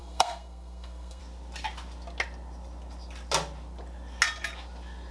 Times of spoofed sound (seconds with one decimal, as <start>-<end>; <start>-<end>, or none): 0.0-1.2